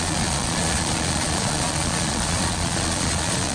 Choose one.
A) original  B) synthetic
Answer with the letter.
B